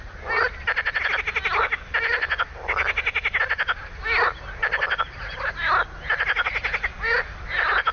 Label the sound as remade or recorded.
recorded